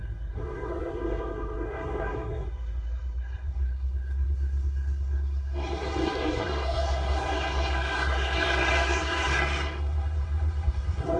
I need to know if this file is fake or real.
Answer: fake